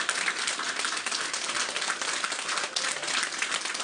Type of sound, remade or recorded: recorded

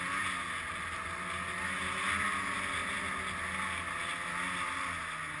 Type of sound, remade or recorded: recorded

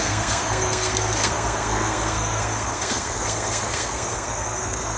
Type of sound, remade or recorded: remade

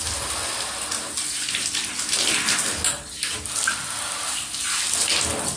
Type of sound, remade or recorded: recorded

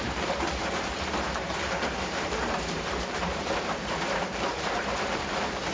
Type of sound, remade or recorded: remade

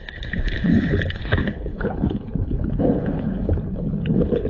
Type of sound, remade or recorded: remade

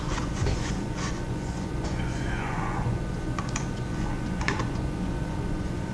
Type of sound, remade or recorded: remade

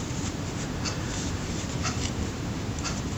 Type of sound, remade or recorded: remade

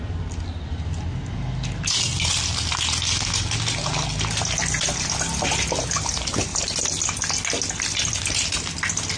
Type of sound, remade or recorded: recorded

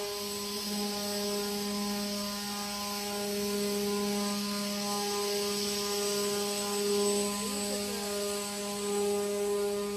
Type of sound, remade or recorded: recorded